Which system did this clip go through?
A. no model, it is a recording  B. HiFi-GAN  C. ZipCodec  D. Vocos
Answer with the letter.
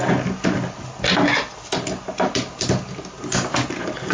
A